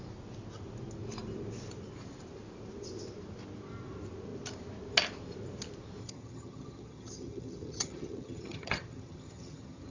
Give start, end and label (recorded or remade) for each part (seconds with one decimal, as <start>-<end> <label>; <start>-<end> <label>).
0.0-6.0 recorded; 6.0-9.9 remade